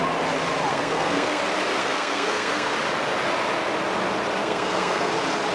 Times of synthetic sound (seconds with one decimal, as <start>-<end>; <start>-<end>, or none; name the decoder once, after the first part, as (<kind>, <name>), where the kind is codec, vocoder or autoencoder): 0.7-1.4 (codec, SNAC); 1.8-2.7; 4.4-5.1